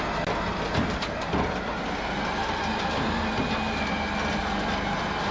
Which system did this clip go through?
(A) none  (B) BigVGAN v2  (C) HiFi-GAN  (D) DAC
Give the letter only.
A